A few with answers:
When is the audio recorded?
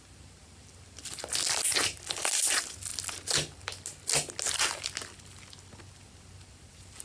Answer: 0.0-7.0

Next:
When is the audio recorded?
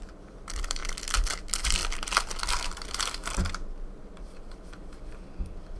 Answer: 0.8-1.3; 3.2-4.0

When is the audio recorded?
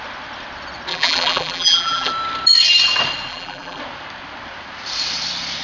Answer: 0.0-0.9; 2.1-3.3; 3.8-5.6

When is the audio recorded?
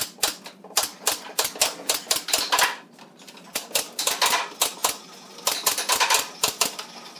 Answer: 0.0-7.2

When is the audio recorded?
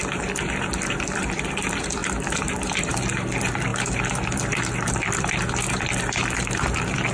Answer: none